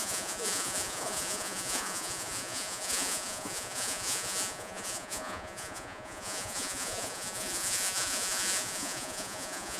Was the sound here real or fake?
fake